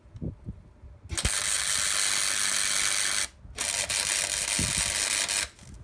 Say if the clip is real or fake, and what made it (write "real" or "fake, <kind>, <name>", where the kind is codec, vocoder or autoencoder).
real